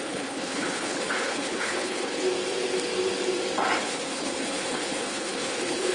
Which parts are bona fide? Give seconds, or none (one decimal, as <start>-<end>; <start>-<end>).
2.2-3.8